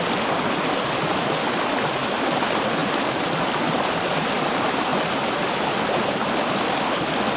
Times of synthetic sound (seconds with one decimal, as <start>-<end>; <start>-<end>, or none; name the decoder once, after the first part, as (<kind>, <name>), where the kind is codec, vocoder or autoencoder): none